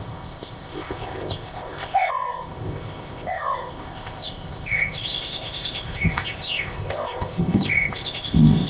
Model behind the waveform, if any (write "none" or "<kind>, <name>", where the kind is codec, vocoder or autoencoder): codec, ZipCodec